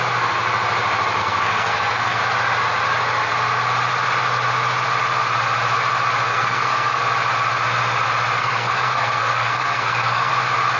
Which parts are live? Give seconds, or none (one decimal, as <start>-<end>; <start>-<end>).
0.0-1.2; 2.2-6.3; 7.0-8.4; 10.3-10.8